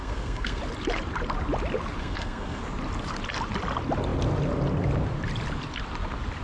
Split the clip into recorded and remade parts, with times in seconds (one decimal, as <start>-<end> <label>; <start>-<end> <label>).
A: 0.0-0.6 remade; 0.6-2.0 recorded; 2.0-2.6 remade; 2.6-6.4 recorded